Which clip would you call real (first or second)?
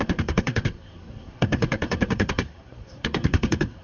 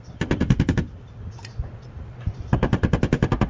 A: second